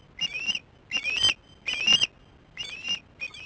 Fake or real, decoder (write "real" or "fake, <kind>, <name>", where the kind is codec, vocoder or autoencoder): real